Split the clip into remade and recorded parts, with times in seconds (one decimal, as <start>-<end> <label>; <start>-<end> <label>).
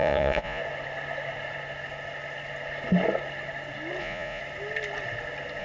0.0-0.6 remade; 0.6-4.0 recorded; 4.0-4.4 remade; 4.4-5.6 recorded